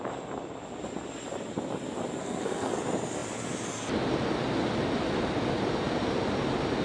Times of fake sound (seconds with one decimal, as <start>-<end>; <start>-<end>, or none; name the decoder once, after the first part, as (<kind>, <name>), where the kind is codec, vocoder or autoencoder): 2.2-2.8 (codec, SNAC)